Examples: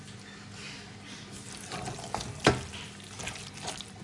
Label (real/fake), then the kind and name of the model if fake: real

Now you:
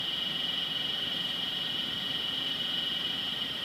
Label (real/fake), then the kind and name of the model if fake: fake, vocoder, BigVGAN v2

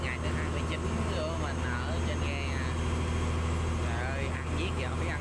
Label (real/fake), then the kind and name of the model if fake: real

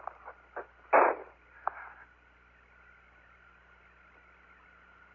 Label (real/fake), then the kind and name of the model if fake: real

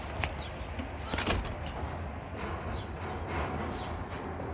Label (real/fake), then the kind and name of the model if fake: real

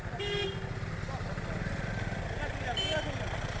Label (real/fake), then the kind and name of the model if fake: real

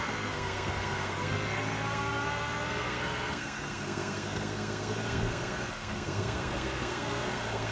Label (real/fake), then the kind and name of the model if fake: fake, codec, SNAC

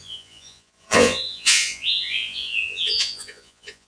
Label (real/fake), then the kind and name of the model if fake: fake, vocoder, Vocos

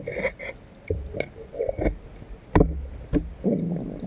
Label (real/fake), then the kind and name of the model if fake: real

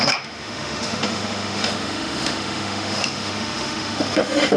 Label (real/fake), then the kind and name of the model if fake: fake, autoencoder, DAC-VAE